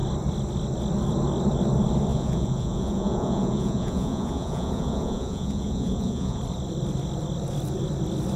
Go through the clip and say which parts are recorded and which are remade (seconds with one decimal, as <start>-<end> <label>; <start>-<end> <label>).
0.0-2.1 recorded; 2.1-6.4 remade; 6.4-8.4 recorded